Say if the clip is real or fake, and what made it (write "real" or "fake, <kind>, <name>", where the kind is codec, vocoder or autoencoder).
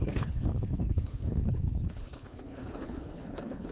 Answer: fake, codec, HILCodec